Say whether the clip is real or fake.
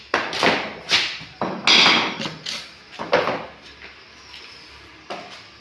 real